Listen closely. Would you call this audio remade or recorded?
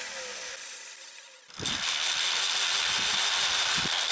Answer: recorded